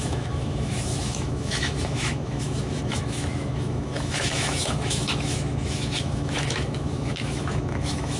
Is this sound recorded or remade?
remade